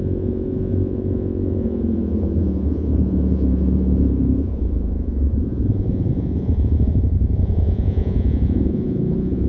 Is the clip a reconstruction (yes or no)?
yes